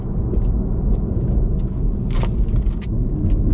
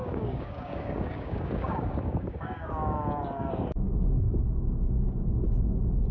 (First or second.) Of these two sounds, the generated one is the second